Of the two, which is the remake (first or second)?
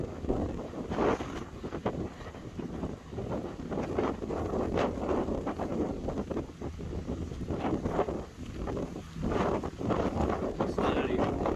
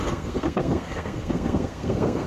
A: second